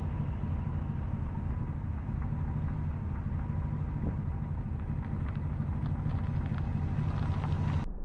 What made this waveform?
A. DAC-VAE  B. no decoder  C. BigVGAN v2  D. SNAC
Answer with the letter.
B